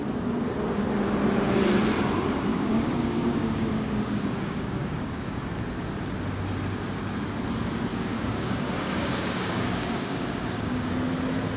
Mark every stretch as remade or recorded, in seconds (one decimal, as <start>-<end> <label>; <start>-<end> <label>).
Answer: 0.0-2.5 recorded; 2.5-5.6 remade; 5.6-7.9 recorded; 7.9-10.9 remade; 10.9-11.6 recorded